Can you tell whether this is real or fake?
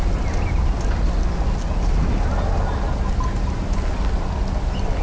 real